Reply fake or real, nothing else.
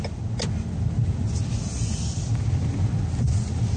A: real